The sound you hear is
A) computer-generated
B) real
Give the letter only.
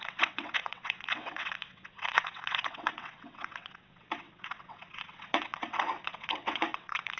A